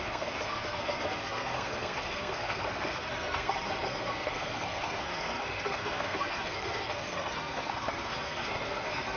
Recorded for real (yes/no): no